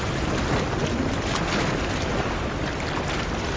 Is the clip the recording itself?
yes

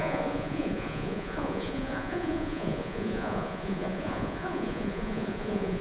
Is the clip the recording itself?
no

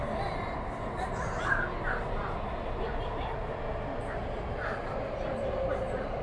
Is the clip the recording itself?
yes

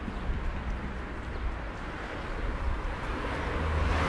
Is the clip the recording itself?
yes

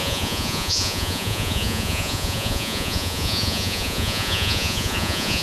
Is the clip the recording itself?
no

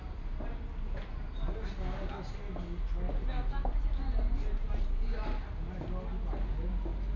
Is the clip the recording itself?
yes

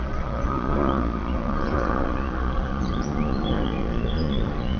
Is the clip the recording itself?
no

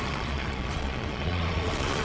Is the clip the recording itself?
no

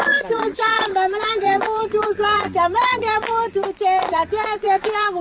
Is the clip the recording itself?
no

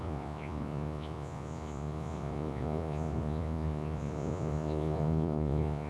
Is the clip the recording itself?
no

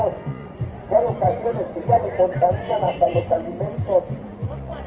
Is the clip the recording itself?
no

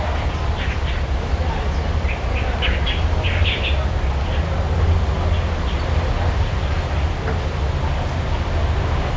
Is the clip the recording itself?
yes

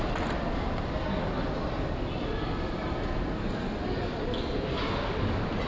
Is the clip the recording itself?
yes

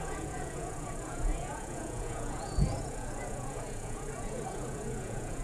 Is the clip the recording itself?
no